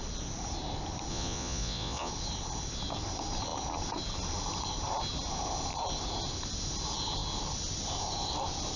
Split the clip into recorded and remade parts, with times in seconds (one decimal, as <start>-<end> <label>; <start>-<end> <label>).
0.0-1.1 recorded; 1.1-2.1 remade; 2.1-8.8 recorded